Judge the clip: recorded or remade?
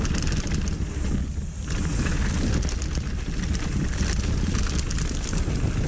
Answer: recorded